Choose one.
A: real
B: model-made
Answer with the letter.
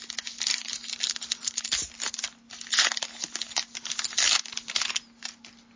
A